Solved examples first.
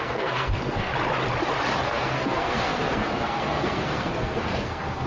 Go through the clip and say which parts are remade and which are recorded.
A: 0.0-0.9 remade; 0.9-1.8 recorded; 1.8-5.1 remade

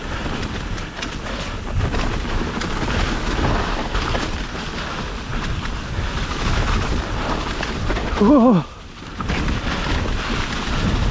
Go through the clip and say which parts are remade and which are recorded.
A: 0.0-11.1 recorded

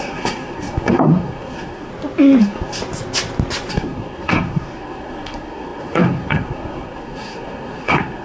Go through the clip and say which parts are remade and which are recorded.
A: 0.0-1.9 remade; 1.9-2.4 recorded; 2.4-2.8 remade; 2.8-3.7 recorded; 3.7-8.2 remade

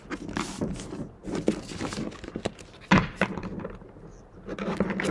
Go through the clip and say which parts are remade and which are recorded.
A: 0.0-5.1 recorded

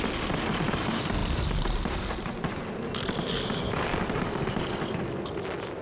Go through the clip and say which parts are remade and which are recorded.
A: 0.0-5.8 recorded